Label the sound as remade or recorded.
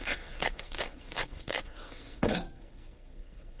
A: remade